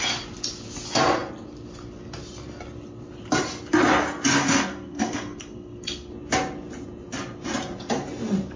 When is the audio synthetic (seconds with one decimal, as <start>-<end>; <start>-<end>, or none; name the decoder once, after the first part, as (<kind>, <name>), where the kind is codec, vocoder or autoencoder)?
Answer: 4.4-6.1 (codec, SNAC)